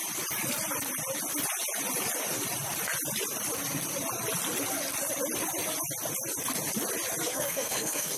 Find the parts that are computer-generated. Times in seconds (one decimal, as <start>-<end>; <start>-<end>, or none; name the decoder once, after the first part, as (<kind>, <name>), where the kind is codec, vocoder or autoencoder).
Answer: 7.3-8.2 (codec, SNAC)